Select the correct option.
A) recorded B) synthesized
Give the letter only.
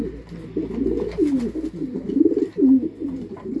A